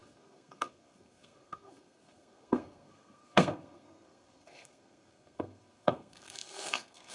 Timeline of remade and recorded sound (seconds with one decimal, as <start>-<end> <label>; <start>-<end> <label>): 0.0-7.1 remade